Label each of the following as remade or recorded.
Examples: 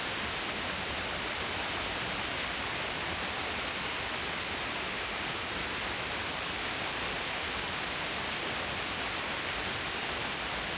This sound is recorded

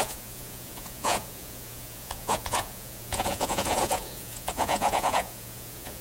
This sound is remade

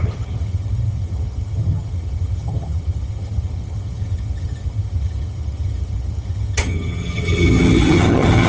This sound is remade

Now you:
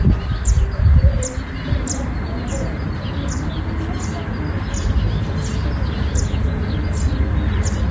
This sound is recorded